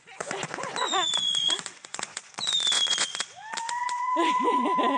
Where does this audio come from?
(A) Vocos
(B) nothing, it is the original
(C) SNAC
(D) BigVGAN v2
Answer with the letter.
A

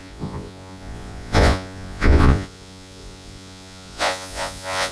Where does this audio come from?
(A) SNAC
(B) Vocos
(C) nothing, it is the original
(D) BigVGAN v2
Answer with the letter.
B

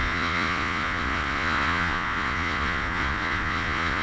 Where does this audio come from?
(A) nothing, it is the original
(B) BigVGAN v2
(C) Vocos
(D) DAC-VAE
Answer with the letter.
C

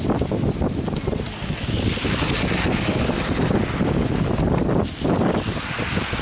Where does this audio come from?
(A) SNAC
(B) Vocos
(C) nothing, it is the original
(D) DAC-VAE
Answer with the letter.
C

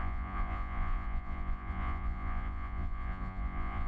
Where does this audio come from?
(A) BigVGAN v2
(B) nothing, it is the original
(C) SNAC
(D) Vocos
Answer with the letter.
D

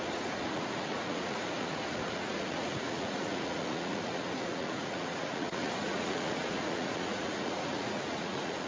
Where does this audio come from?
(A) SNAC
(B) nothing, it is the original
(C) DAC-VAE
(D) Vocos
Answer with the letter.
D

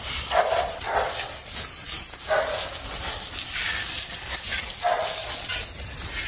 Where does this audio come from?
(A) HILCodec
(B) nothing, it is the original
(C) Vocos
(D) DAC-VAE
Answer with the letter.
B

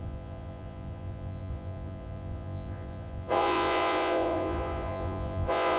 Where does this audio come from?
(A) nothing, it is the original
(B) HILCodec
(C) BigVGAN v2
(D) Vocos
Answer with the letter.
D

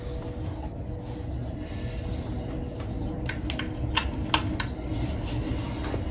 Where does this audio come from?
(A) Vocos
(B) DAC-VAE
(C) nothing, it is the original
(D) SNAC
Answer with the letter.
C